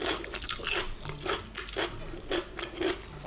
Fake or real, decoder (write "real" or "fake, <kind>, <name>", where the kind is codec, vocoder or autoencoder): real